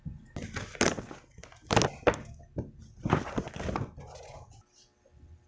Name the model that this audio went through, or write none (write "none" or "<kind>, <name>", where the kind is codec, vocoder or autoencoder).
none